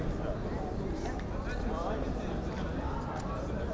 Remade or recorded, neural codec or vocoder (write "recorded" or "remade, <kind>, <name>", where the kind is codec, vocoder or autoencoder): recorded